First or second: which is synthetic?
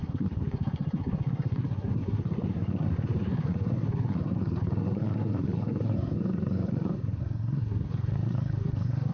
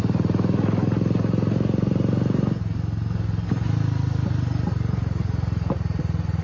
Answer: first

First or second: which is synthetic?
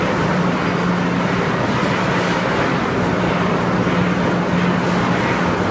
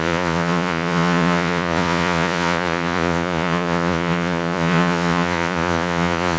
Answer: second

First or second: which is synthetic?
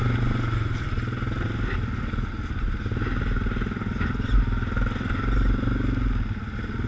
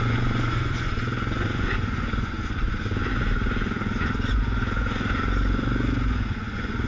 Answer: second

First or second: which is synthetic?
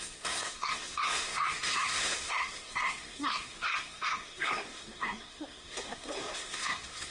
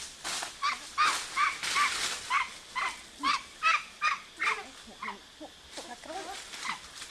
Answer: first